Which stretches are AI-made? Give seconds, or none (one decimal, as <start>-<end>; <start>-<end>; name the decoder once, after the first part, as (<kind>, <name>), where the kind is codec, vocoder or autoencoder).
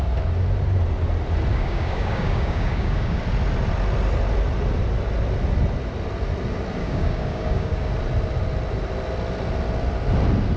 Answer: 1.5-3.2 (codec, DAC); 6.8-7.9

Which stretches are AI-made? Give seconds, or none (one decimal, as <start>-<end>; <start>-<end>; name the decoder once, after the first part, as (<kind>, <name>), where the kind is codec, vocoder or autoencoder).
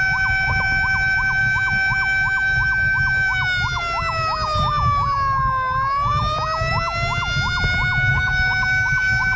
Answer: 8.1-9.4 (codec, DAC)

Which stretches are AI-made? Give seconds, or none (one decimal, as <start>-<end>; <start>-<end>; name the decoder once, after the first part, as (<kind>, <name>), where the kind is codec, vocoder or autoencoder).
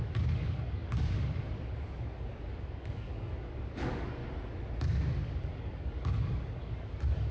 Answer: 0.0-4.2 (codec, DAC); 4.8-7.3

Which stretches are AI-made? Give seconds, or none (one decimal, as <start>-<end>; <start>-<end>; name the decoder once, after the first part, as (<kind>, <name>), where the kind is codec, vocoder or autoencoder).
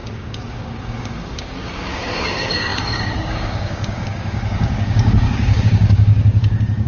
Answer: 0.0-6.9 (codec, DAC)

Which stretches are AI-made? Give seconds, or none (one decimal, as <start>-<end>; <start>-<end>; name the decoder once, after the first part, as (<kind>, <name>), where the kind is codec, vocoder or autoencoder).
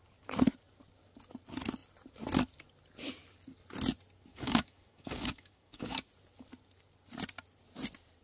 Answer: 4.3-6.1 (codec, DAC)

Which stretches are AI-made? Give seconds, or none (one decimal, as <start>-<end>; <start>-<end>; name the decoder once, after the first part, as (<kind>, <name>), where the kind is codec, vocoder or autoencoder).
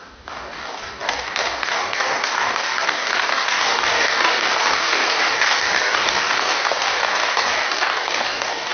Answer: 0.0-8.7 (codec, DAC)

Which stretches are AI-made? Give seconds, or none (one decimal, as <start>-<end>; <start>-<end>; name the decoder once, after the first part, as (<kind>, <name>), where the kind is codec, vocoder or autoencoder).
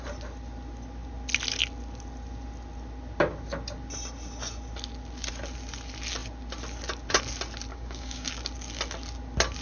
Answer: 7.7-8.3 (codec, DAC)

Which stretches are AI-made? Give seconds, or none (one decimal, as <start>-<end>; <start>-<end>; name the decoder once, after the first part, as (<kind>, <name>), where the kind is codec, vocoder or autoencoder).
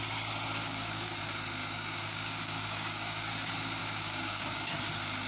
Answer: 0.6-1.2 (codec, DAC); 1.6-3.3; 3.8-4.7